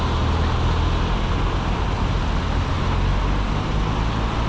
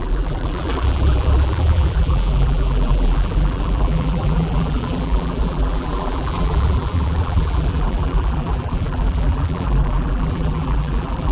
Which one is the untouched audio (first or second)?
first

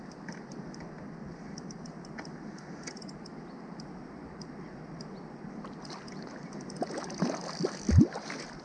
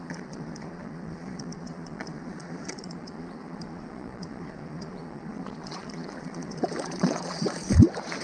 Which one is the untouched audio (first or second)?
first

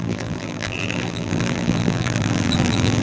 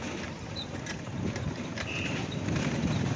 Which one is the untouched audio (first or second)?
second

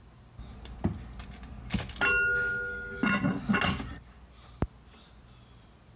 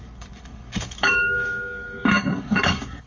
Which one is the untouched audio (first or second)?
first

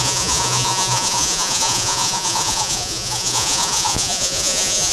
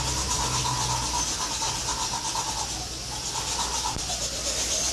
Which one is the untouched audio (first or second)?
second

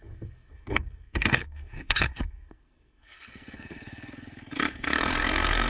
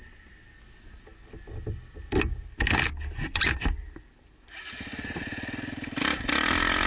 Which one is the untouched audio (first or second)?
second